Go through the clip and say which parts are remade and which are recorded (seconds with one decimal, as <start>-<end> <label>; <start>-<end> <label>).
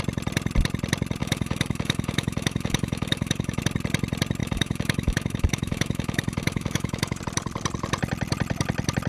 0.0-1.2 recorded; 1.2-3.6 remade; 3.6-4.4 recorded; 4.4-7.2 remade; 7.2-9.1 recorded